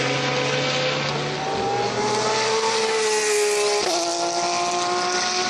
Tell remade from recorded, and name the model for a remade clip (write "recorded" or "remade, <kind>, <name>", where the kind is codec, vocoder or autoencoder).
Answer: recorded